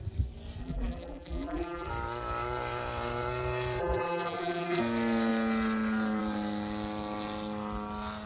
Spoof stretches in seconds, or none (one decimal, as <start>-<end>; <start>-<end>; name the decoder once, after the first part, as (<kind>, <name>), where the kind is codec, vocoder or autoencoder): 0.6-1.9 (vocoder, BigVGAN v2); 3.8-4.8